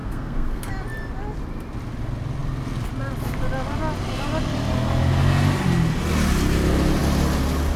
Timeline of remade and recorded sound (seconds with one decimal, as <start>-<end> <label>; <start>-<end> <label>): 0.0-0.7 remade; 0.7-7.8 recorded